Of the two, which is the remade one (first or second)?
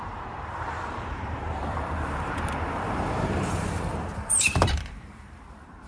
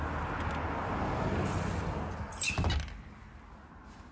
first